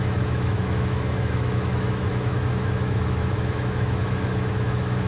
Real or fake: fake